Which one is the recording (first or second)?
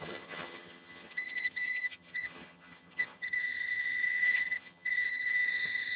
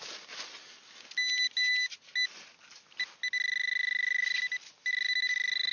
second